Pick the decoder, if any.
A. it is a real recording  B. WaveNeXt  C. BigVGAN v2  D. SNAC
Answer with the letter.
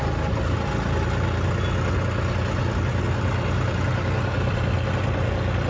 A